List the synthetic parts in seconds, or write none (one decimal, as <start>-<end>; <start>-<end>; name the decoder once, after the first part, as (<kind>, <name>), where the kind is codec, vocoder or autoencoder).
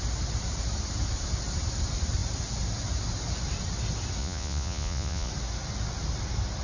4.2-5.3 (vocoder, Vocos)